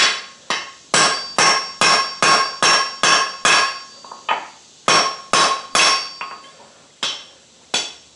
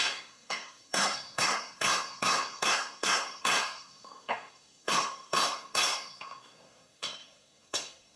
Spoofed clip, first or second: second